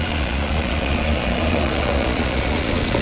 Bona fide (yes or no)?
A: no